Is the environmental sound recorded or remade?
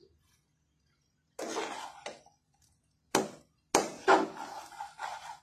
recorded